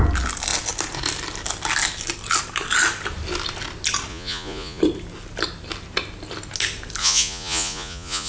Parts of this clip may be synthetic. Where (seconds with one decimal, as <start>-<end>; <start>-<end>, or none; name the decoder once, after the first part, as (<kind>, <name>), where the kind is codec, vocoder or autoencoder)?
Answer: 4.1-4.8 (vocoder, Vocos); 7.0-8.3